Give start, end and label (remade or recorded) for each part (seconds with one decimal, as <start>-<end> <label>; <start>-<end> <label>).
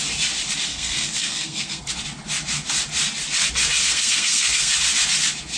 0.0-0.7 recorded; 0.7-1.9 remade; 1.9-3.8 recorded; 3.8-4.7 remade; 4.7-5.6 recorded